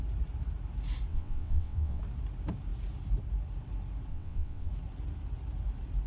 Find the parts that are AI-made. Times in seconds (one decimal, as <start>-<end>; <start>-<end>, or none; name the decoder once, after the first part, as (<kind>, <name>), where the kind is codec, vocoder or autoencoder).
1.1-2.0 (vocoder, WaveNeXt); 4.1-4.7